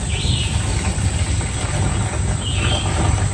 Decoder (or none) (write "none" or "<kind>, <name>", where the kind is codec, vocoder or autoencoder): none